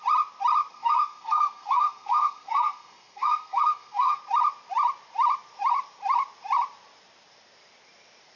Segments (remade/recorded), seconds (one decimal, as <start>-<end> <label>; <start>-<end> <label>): 0.0-0.7 recorded; 0.7-4.2 remade; 4.2-8.4 recorded